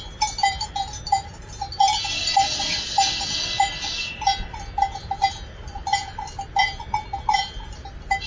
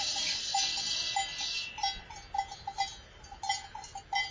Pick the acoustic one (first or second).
second